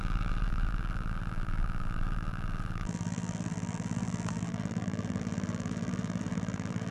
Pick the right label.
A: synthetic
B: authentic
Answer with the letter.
A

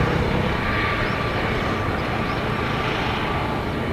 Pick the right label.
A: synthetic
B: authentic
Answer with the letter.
B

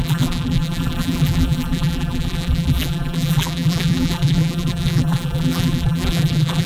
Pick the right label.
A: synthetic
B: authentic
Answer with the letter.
A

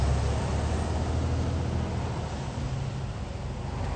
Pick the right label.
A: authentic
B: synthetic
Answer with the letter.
A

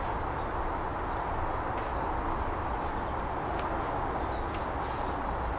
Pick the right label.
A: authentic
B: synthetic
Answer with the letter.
A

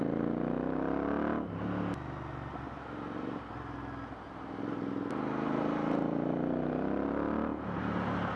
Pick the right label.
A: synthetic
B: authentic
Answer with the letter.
B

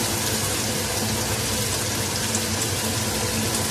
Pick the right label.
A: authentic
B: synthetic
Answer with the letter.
A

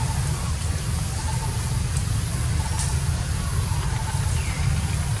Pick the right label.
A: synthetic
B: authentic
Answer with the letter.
B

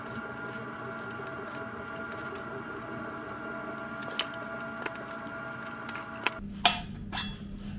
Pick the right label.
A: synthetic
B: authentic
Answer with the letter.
B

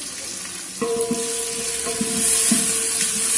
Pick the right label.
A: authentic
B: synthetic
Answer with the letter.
A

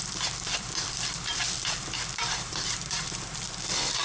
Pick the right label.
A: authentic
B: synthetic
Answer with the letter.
B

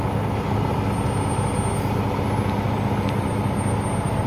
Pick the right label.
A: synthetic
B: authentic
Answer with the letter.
B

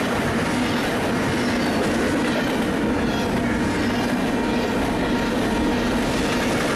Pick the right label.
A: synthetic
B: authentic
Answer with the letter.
B